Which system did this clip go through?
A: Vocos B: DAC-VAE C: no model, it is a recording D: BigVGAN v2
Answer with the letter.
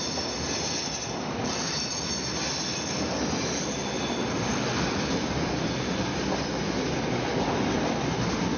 C